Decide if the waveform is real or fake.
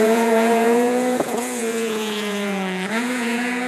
fake